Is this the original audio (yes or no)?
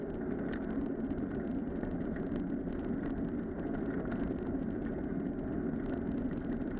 yes